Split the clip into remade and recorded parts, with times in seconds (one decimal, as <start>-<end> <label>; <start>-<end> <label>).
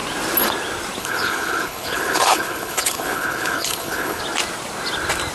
0.0-1.0 recorded; 1.0-4.2 remade; 4.2-5.3 recorded